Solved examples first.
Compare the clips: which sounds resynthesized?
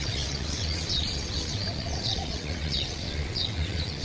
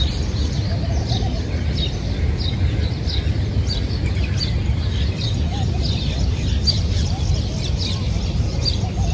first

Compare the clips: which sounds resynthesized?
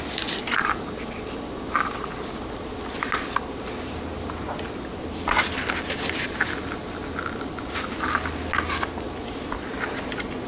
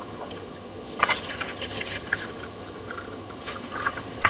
second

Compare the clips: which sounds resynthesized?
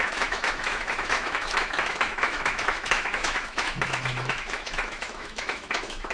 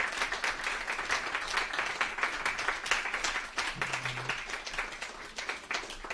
first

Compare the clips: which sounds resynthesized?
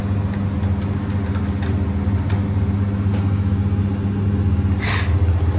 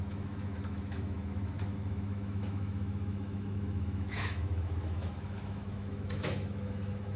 second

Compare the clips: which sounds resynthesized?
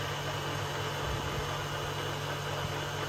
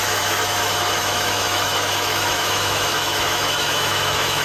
second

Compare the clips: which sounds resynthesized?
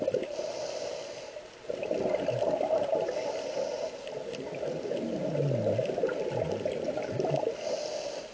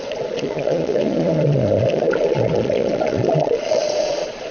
second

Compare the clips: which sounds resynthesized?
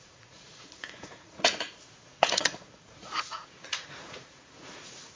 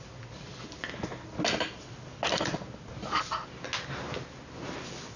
first